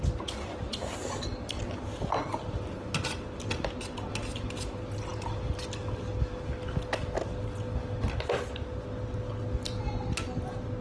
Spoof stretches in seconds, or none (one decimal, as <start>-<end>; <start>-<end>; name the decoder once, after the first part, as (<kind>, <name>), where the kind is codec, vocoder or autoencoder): none